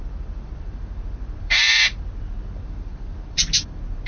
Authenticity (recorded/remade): remade